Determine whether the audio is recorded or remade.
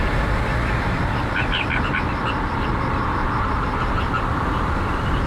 recorded